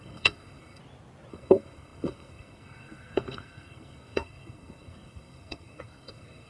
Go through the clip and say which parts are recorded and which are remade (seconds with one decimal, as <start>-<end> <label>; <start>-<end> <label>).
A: 0.0-0.8 remade; 0.8-1.3 recorded; 1.3-6.5 remade